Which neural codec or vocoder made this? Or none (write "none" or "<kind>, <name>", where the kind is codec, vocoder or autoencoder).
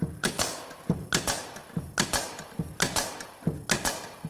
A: none